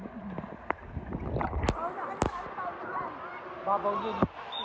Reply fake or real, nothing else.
real